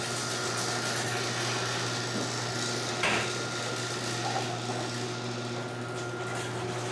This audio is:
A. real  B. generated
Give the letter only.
A